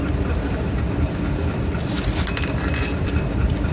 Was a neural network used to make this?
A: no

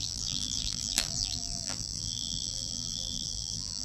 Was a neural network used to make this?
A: yes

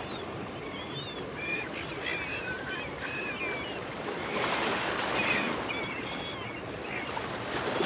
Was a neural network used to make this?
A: no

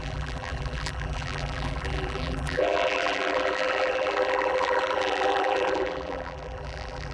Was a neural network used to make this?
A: yes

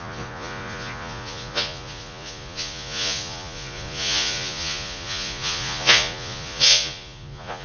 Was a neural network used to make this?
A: yes